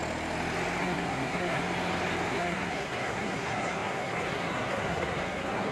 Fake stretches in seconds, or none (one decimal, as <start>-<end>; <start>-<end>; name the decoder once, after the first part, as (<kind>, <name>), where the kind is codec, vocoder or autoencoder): 0.8-1.6 (codec, SNAC); 2.3-5.7